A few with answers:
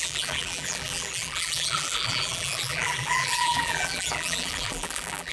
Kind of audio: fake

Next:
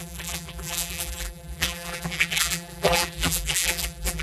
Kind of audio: fake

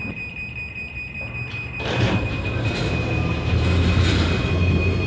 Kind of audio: fake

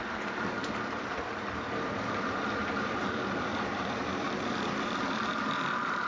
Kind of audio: fake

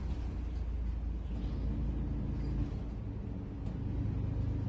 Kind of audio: real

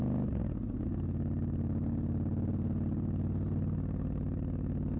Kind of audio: real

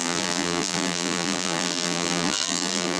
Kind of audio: fake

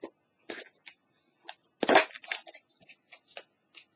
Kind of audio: real